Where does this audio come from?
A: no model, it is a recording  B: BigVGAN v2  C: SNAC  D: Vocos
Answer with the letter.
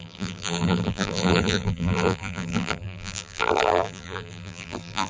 B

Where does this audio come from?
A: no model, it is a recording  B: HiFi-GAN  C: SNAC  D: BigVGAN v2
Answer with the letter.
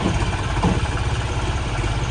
A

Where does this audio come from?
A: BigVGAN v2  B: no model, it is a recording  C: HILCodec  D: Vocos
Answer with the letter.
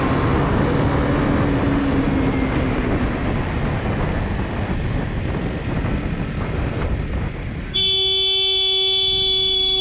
B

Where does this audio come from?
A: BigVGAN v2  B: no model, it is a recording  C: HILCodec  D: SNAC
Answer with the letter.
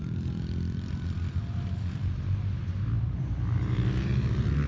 A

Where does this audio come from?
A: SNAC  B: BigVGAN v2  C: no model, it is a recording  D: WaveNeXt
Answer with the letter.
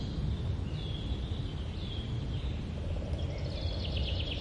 C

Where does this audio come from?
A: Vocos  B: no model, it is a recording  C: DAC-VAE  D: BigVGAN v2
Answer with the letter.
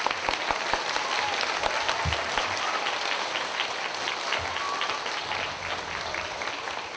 B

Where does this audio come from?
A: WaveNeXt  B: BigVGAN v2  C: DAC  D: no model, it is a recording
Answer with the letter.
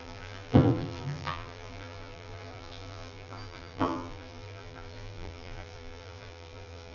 B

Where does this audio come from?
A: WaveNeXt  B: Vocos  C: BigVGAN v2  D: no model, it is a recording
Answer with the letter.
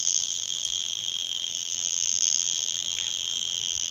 C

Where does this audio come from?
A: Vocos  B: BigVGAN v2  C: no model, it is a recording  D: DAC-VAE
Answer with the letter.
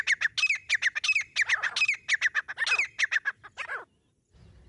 C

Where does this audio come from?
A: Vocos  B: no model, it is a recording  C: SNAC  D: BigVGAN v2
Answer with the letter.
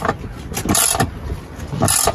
B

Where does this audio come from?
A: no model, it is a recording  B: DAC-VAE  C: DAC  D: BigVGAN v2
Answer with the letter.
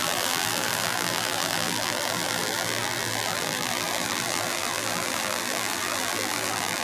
D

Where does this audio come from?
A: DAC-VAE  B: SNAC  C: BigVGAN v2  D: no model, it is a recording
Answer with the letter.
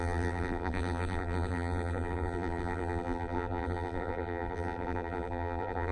C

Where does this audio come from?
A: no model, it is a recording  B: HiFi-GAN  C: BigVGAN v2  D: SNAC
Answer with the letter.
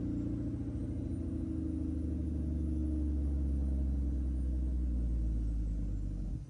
A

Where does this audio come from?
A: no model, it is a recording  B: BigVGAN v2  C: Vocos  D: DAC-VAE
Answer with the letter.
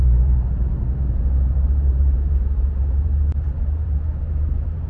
B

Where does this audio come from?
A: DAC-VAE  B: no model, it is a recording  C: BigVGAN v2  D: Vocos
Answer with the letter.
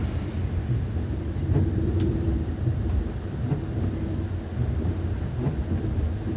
B